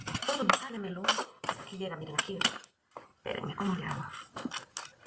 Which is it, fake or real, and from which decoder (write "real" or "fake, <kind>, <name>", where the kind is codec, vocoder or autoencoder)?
real